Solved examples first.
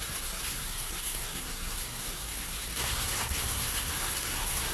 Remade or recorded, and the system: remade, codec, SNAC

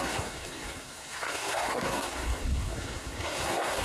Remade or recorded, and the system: remade, codec, SNAC